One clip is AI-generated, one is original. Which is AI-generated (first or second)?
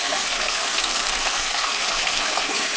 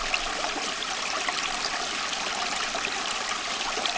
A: first